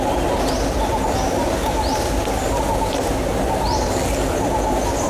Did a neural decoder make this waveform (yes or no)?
no